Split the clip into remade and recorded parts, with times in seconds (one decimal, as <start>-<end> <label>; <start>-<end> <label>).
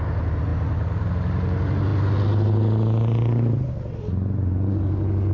0.0-5.3 recorded